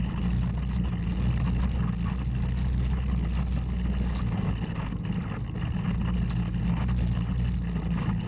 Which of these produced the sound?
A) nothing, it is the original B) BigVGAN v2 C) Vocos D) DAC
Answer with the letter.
A